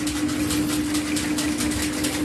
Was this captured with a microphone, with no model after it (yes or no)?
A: yes